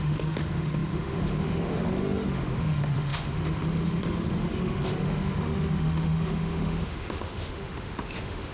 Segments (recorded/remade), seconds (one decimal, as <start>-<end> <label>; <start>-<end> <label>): 0.0-8.5 remade